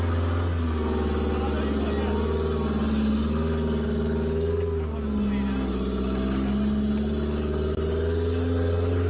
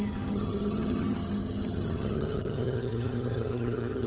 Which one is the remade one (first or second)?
second